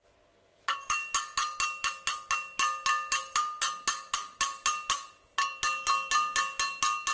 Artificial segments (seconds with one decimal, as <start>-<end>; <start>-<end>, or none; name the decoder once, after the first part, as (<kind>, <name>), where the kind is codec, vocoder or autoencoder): none